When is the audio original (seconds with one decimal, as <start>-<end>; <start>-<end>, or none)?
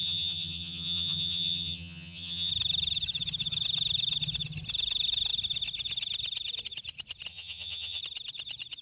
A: 2.5-7.3; 8.0-8.8